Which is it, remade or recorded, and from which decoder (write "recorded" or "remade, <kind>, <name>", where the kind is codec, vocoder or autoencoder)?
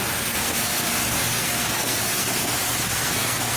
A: remade, codec, SNAC